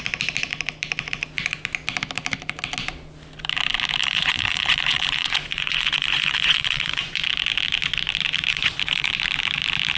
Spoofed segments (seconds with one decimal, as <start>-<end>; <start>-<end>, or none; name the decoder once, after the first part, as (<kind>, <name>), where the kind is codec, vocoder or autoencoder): 4.0-7.2 (vocoder, Vocos); 8.5-9.1